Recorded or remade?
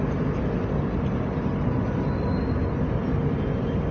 recorded